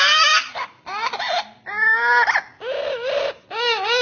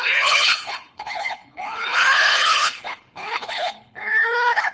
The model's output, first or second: second